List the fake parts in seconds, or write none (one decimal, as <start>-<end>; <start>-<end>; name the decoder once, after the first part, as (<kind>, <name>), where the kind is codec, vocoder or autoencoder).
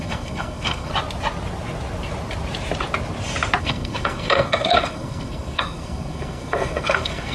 0.0-0.9 (codec, SNAC); 3.6-7.3